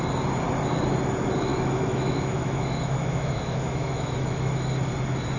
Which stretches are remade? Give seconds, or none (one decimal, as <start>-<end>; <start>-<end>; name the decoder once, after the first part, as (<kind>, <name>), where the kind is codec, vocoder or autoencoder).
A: 1.5-4.7 (autoencoder, DAC-VAE)

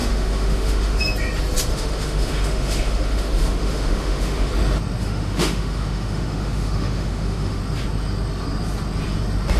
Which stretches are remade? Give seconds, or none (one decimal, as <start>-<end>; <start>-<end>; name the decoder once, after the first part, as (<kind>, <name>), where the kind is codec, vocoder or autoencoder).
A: 0.0-1.0 (autoencoder, DAC-VAE); 1.7-4.5; 5.0-7.6

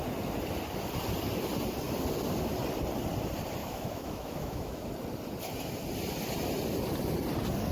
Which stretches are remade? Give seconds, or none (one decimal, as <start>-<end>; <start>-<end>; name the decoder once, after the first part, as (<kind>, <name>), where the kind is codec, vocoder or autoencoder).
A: 3.6-4.9 (autoencoder, DAC-VAE)

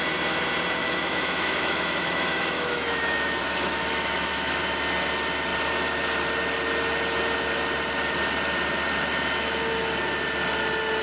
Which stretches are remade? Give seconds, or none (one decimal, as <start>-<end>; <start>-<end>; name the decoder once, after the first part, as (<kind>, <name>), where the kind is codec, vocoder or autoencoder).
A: 0.8-4.6 (autoencoder, DAC-VAE)

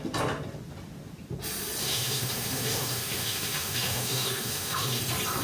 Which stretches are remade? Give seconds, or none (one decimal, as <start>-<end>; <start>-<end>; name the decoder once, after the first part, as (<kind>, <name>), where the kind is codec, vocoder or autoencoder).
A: 1.8-5.0 (autoencoder, DAC-VAE)